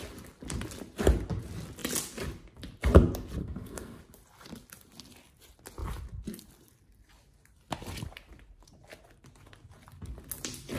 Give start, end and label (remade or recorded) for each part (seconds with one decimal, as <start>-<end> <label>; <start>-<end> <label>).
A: 0.0-3.4 recorded; 3.4-4.0 remade; 4.0-10.8 recorded